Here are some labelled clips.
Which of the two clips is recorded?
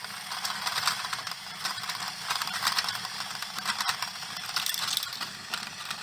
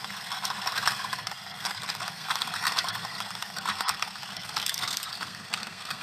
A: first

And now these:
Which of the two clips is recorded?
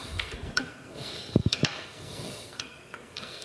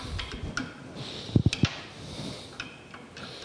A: second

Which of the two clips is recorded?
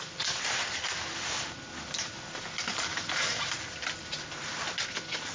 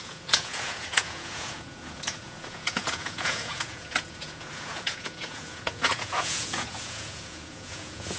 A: first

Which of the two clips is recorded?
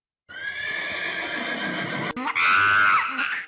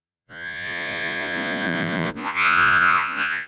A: first